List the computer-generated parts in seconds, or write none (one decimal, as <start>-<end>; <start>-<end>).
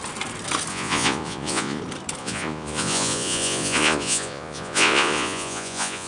0.7-1.8; 2.2-6.1